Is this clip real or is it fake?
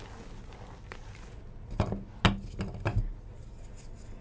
real